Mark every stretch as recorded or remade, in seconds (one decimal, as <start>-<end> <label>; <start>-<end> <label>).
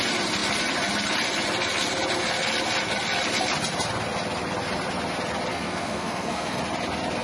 0.0-5.5 recorded; 5.5-6.6 remade; 6.6-7.2 recorded